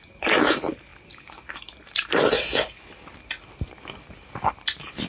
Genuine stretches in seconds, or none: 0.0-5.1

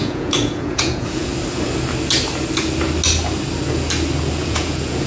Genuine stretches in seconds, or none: 1.3-4.4

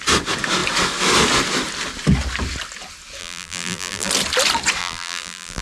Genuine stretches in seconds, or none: 0.0-3.2; 4.1-4.8

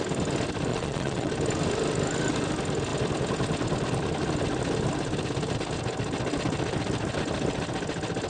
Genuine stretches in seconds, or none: 0.0-0.7; 1.3-8.3

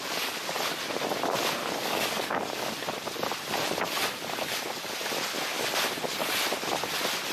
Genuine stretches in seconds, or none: 0.0-1.6; 2.6-7.3